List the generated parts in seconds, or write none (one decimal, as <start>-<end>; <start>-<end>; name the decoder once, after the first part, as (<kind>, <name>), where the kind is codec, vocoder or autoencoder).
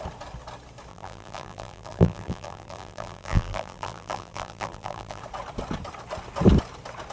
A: 0.9-5.2 (vocoder, BigVGAN v2)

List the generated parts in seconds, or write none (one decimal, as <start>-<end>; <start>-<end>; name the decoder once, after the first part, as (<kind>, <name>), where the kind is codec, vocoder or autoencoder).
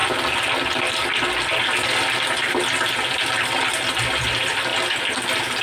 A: none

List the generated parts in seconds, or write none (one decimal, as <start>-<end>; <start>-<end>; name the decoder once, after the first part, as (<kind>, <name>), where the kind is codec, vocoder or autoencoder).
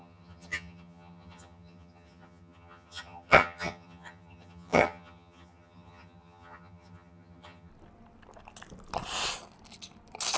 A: 0.0-7.7 (vocoder, HiFi-GAN)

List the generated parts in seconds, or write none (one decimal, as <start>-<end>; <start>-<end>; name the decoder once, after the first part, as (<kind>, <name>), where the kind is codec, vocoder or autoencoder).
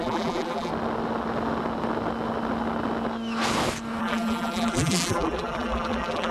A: 0.0-0.7 (vocoder, BigVGAN v2); 4.0-6.3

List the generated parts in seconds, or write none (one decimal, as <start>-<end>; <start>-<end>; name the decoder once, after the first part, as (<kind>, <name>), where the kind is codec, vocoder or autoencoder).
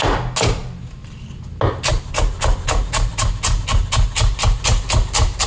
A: none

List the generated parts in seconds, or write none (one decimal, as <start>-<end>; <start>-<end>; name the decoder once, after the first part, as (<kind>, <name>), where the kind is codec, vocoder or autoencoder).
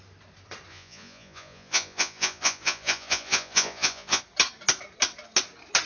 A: 0.7-4.2 (vocoder, Vocos)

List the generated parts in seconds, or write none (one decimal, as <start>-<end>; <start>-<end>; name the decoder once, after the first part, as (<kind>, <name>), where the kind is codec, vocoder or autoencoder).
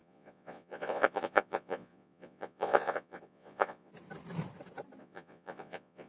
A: 0.0-3.9 (vocoder, Vocos); 5.0-6.1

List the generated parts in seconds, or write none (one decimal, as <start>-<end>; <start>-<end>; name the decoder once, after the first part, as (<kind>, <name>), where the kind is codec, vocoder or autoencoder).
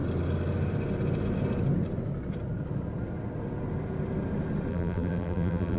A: 4.7-5.8 (vocoder, BigVGAN v2)